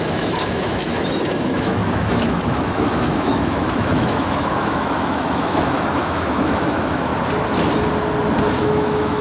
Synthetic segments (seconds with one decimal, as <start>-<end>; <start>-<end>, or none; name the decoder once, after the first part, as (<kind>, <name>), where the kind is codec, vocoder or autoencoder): 0.0-7.1 (autoencoder, DAC-VAE); 8.6-9.2